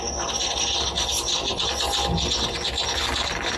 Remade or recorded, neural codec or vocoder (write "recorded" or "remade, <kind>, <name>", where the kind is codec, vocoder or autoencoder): recorded